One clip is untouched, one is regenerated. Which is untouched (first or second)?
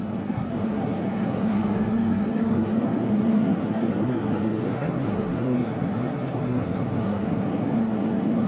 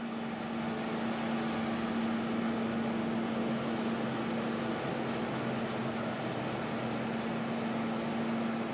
second